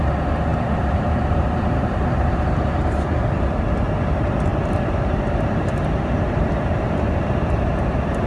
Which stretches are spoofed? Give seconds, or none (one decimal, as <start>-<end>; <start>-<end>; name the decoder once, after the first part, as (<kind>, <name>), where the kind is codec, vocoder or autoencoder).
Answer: 0.5-3.6 (vocoder, BigVGAN v2); 4.5-7.3